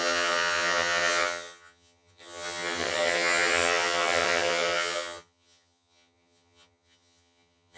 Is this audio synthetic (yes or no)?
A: yes